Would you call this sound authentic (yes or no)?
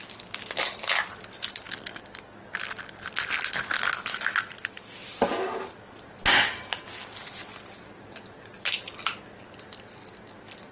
yes